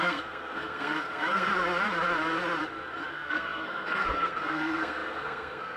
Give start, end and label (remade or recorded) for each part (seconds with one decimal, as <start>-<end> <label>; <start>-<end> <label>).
0.0-1.5 remade; 1.5-3.1 recorded; 3.1-5.8 remade